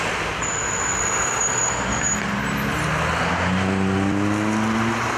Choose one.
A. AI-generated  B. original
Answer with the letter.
B